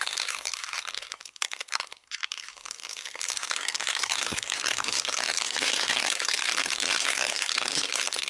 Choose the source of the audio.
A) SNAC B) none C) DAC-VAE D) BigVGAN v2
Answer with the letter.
A